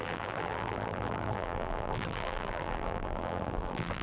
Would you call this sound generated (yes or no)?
yes